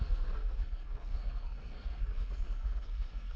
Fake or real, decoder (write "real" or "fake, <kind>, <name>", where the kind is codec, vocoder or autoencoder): fake, codec, SNAC